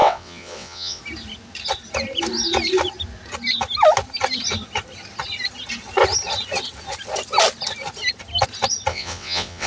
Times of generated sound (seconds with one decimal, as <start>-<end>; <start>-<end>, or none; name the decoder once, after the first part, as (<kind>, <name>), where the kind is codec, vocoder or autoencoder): 0.0-1.0 (vocoder, WaveNeXt); 8.9-9.7